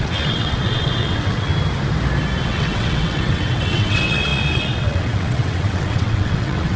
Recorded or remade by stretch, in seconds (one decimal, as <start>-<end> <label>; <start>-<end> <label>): 0.0-1.5 remade; 1.5-2.4 recorded; 2.4-6.8 remade